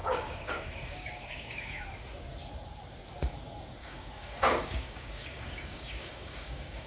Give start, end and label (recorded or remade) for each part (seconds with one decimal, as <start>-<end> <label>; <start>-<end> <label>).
0.0-1.8 remade; 1.8-3.8 recorded; 3.8-6.9 remade